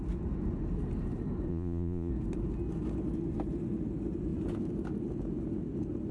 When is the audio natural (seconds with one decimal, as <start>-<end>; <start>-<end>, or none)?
0.0-1.5; 2.1-6.1

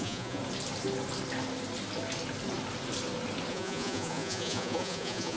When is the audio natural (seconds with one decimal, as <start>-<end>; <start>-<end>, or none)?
0.4-3.5